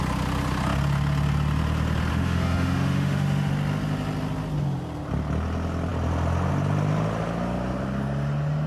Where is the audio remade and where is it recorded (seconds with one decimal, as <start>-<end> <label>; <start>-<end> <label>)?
0.0-2.1 recorded; 2.1-3.5 remade; 3.5-8.7 recorded